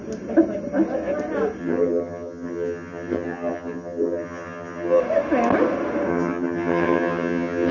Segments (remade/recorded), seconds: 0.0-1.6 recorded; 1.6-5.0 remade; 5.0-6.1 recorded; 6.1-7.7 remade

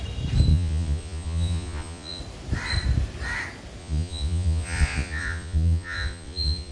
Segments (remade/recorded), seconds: 0.0-0.5 recorded; 0.5-2.2 remade; 2.2-3.8 recorded; 3.8-6.7 remade

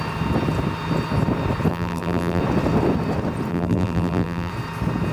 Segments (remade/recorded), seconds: 0.0-1.7 recorded; 1.7-2.4 remade; 2.4-3.5 recorded; 3.5-4.5 remade; 4.5-5.1 recorded

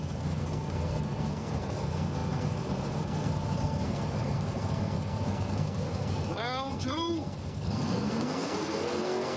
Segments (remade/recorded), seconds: 0.0-9.4 remade

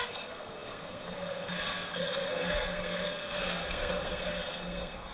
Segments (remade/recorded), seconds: 0.0-5.1 remade